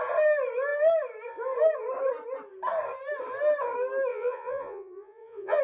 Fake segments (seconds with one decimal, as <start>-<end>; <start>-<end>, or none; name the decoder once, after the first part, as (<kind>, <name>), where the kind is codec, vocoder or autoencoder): 4.1-5.6 (vocoder, Vocos)

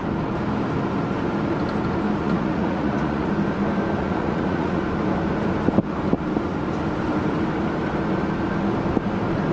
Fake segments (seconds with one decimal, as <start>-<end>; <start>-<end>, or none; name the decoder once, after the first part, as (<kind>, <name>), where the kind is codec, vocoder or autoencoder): 2.2-3.3 (vocoder, Vocos); 4.0-4.8

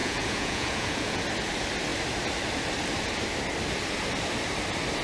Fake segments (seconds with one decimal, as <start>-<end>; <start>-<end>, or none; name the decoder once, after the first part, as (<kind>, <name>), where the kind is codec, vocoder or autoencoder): 0.0-1.2 (vocoder, Vocos)